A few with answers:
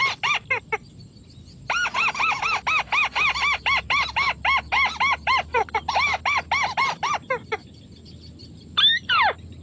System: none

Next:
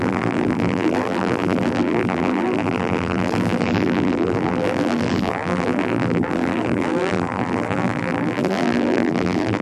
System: vocoder, BigVGAN v2